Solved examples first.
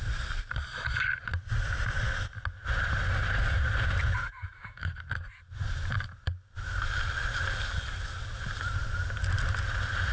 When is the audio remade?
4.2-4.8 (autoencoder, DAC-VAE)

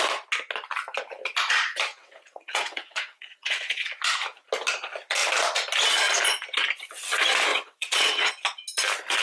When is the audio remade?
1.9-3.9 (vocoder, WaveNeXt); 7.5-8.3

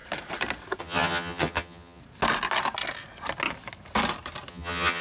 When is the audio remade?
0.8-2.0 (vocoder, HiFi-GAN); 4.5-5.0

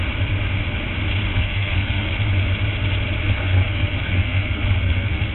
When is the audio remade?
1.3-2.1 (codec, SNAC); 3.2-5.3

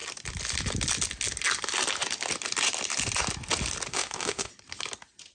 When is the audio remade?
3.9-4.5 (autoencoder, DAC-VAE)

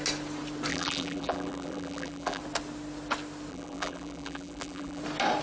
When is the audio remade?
0.7-2.4 (vocoder, BigVGAN v2); 3.5-5.0

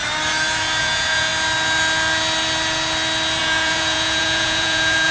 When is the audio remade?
0.8-1.3 (vocoder, Vocos); 3.4-5.1

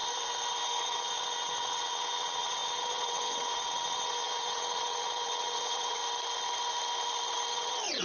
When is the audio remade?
0.8-6.0 (vocoder, WaveNeXt); 7.5-8.0